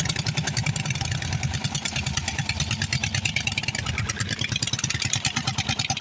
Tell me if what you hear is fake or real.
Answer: real